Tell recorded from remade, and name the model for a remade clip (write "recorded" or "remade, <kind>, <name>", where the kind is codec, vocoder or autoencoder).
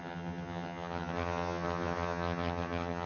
remade, vocoder, HiFi-GAN